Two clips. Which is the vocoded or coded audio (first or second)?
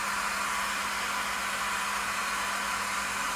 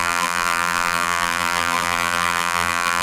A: second